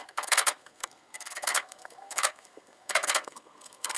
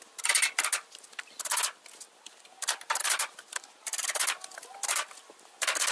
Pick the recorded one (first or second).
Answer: second